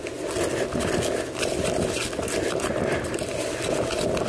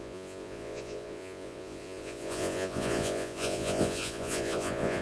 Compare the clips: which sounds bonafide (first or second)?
first